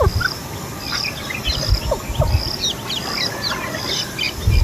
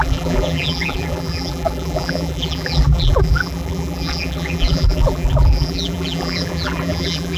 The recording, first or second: first